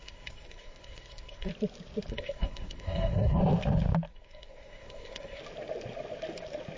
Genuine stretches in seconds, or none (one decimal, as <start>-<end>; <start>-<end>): 1.5-2.1; 3.4-4.1; 5.4-6.8